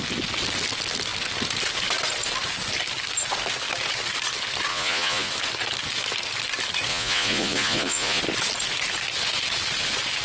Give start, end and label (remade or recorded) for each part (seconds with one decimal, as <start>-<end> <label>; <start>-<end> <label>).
0.0-4.7 recorded; 4.7-5.3 remade; 5.3-6.9 recorded; 6.9-8.2 remade; 8.2-10.2 recorded